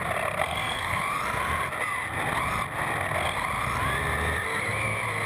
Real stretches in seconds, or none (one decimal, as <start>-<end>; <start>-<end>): 0.0-0.4; 1.0-5.3